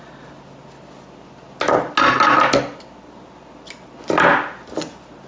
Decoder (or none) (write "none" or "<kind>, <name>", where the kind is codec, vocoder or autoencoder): none